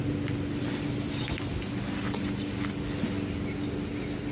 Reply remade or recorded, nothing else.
recorded